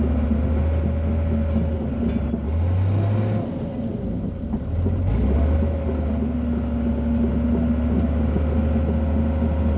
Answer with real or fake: real